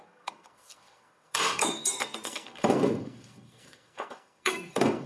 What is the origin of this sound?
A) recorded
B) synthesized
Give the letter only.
B